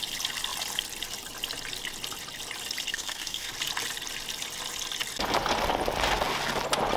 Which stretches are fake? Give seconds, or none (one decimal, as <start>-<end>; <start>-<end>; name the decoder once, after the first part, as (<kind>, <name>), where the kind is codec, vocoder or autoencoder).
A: 2.9-3.5 (codec, SNAC)